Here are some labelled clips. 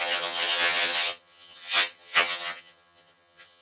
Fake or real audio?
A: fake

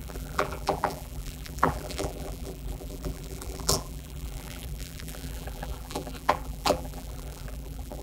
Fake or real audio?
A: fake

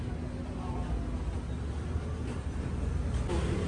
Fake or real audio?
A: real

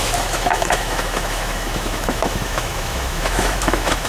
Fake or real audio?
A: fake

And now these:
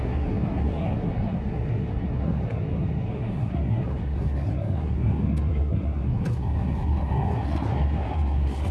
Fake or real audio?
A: fake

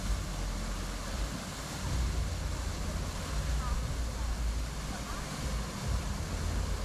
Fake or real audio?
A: real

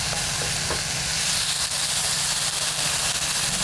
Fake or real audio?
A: real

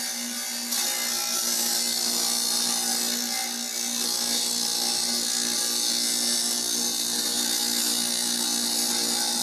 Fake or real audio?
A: real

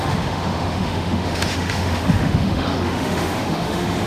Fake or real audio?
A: fake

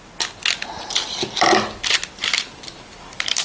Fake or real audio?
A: real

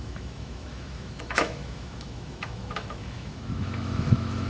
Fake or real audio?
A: fake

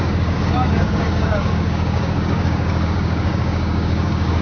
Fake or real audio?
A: fake